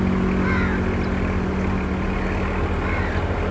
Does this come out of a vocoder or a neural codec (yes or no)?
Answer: no